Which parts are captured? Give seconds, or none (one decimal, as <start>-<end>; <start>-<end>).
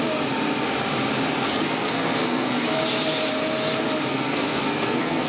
0.0-1.5; 2.8-4.1